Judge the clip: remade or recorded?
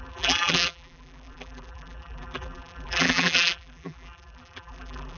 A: remade